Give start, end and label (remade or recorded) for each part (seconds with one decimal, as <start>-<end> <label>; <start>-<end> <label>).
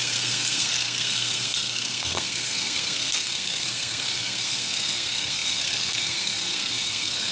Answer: 0.0-7.3 remade